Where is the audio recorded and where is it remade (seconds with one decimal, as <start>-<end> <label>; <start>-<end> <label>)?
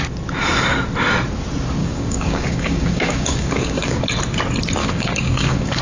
0.0-1.8 recorded; 1.8-4.0 remade; 4.0-4.8 recorded; 4.8-5.8 remade